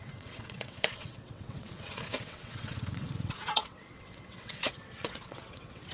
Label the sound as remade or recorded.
remade